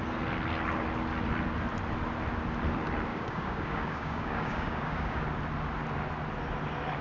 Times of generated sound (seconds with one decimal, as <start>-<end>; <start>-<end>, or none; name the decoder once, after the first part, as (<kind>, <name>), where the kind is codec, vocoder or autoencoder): 3.1-5.2 (codec, DAC)